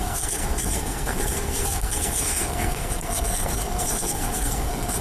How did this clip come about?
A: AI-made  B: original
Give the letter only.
A